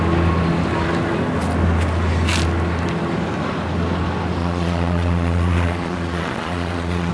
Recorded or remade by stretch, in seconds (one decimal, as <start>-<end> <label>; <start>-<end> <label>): 0.0-4.4 recorded; 4.4-7.1 remade